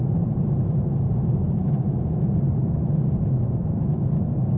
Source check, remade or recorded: remade